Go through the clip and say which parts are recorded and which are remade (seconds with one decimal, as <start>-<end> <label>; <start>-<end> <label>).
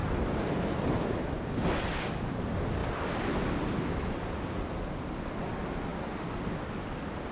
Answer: 0.0-7.3 recorded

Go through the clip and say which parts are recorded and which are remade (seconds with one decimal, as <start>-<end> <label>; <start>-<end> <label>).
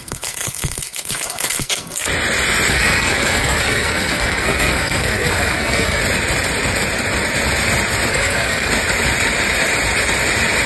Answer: 0.0-2.1 remade; 2.1-2.7 recorded; 2.7-6.0 remade; 6.0-8.1 recorded; 8.1-8.7 remade; 8.7-10.7 recorded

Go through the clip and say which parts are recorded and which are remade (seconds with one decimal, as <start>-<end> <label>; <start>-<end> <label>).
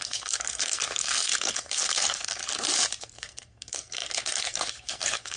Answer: 0.0-2.4 remade; 2.4-3.0 recorded; 3.0-5.4 remade